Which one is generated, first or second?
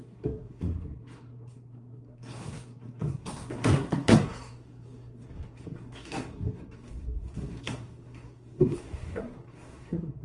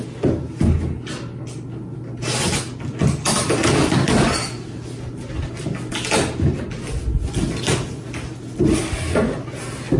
first